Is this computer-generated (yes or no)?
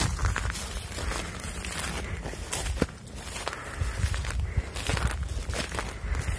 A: no